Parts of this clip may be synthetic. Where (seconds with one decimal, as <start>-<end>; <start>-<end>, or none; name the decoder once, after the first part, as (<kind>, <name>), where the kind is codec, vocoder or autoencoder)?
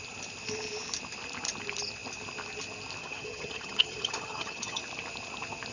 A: 3.0-4.8 (vocoder, HiFi-GAN)